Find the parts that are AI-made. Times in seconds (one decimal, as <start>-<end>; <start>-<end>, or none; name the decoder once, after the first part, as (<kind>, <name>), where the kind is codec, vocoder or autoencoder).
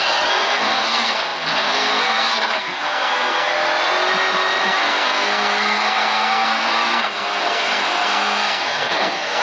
0.0-3.5 (codec, SNAC); 4.6-9.4